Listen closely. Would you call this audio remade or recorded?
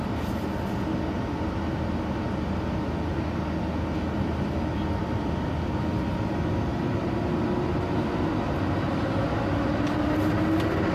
recorded